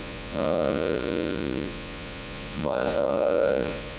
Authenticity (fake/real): fake